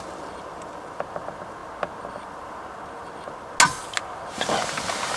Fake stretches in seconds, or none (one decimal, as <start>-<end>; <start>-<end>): none